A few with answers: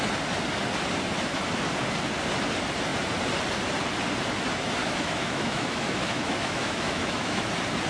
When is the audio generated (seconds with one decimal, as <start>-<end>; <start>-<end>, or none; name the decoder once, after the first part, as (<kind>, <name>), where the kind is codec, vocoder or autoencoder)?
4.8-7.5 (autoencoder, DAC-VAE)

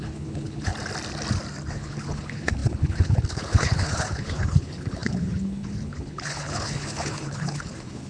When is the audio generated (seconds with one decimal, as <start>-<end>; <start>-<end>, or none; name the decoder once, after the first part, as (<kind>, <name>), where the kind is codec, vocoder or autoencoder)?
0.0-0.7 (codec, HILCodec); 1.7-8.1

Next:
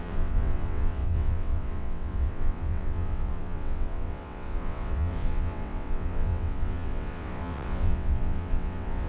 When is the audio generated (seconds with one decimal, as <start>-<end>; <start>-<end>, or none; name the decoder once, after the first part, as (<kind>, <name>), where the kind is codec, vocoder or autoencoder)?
0.0-9.1 (vocoder, WaveNeXt)

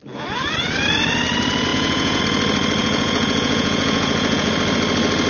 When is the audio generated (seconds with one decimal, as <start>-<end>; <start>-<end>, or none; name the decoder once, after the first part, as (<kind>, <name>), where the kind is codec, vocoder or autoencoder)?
1.7-2.2 (vocoder, Vocos); 2.8-4.5

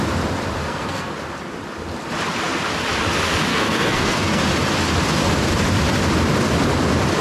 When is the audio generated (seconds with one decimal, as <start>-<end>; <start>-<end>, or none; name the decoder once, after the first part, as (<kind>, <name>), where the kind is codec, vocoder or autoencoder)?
0.6-1.1 (codec, SNAC); 3.5-4.4

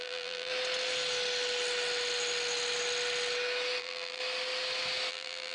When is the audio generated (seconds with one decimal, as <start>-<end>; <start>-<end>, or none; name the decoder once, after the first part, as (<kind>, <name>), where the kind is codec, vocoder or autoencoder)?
0.0-0.5 (vocoder, BigVGAN v2); 3.8-4.2; 5.1-5.5